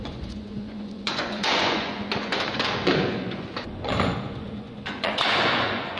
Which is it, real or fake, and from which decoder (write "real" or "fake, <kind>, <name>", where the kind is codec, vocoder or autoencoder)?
fake, vocoder, Vocos